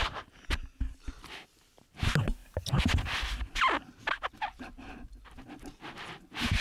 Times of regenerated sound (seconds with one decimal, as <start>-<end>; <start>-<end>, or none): none